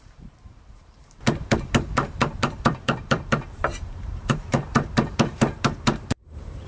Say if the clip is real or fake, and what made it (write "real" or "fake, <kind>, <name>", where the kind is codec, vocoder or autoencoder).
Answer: fake, vocoder, BigVGAN v2